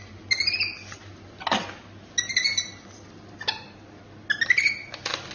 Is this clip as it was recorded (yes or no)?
yes